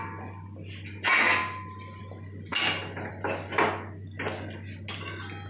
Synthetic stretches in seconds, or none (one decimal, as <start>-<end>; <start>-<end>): none